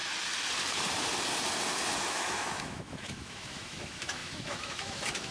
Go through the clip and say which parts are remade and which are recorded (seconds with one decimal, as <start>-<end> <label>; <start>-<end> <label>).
0.0-2.0 recorded; 2.0-5.3 remade